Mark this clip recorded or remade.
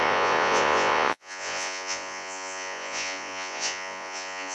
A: remade